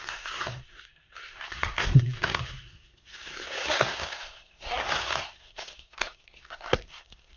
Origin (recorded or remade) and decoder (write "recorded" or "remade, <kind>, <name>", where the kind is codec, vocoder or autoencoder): remade, codec, SNAC